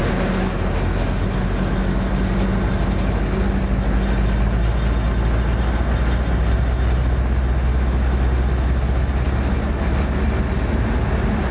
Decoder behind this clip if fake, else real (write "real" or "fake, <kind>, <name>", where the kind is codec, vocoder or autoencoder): real